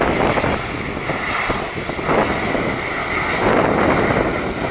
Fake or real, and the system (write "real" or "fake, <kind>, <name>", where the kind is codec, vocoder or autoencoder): real